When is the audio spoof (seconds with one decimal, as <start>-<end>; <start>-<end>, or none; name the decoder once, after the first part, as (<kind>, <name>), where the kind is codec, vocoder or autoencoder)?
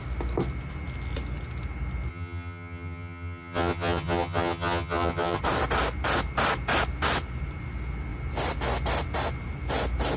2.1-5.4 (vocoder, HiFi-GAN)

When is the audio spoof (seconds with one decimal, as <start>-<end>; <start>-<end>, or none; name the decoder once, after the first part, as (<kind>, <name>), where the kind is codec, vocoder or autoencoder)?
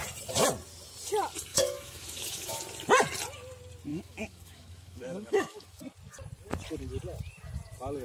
1.5-2.6 (autoencoder, DAC-VAE); 3.9-5.8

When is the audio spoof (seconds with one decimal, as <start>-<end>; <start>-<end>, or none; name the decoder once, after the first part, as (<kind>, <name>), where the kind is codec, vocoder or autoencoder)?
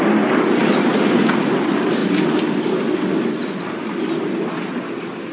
none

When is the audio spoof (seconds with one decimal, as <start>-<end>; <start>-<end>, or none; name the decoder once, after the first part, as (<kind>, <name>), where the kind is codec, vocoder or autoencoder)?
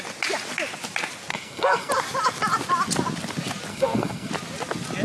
1.3-1.9 (codec, SNAC); 3.7-4.3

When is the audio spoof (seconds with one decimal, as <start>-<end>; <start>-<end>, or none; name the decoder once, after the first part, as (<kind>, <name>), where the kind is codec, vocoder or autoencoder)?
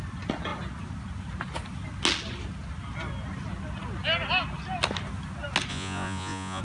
5.7-6.6 (vocoder, Vocos)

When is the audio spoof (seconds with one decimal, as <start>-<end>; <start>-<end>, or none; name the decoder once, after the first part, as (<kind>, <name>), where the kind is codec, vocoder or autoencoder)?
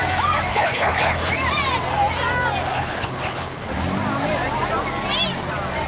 0.5-1.3 (codec, HILCodec); 2.7-3.7